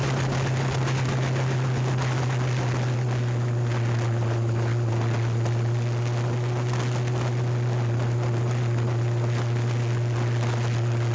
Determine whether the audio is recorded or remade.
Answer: recorded